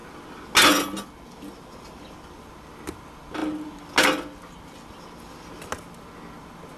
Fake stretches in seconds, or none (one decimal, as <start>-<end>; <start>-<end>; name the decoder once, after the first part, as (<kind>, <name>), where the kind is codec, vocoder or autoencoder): none